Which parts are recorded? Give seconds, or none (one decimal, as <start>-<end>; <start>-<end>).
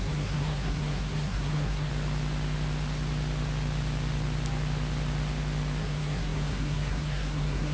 1.9-5.8